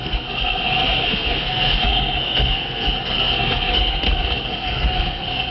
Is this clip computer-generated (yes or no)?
yes